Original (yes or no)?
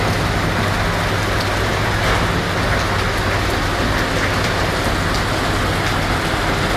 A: yes